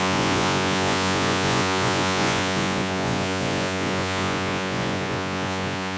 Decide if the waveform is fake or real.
fake